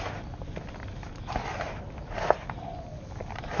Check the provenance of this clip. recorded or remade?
recorded